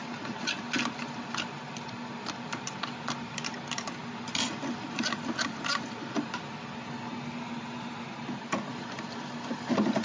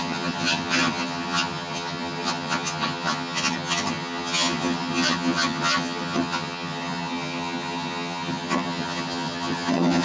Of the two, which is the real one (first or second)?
first